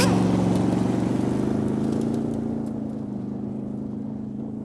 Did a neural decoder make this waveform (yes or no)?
no